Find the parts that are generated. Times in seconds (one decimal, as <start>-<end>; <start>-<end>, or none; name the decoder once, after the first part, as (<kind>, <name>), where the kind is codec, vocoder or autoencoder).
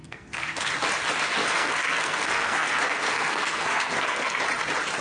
0.0-0.7 (codec, SNAC); 1.4-4.4